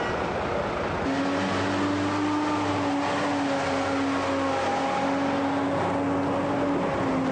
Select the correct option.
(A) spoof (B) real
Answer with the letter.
B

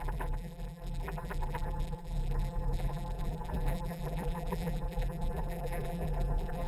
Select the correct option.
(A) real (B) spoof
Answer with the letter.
B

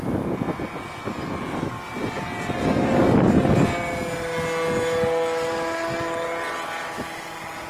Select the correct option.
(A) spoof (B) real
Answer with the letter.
B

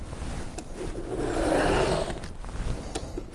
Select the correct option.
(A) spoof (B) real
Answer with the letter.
B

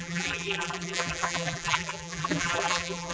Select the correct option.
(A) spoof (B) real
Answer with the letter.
A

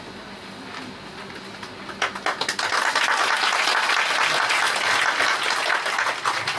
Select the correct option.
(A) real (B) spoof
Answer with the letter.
A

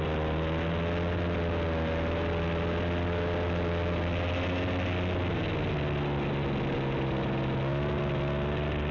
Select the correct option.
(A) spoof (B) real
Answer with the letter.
B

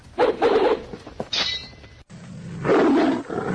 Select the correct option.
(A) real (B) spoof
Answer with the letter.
A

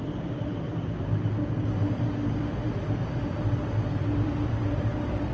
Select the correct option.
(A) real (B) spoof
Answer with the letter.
B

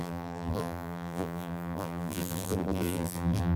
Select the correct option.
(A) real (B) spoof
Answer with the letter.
B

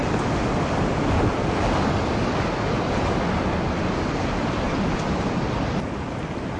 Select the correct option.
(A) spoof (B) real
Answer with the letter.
B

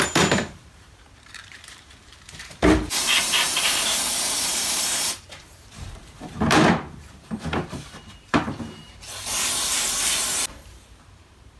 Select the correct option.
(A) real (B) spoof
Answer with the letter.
B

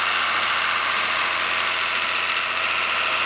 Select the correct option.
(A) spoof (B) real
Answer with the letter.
A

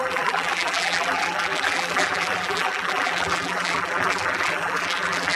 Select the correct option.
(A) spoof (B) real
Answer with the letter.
A